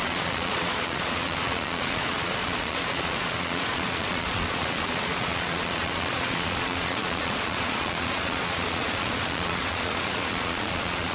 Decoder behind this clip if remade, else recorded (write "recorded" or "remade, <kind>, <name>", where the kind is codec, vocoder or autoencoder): remade, vocoder, Vocos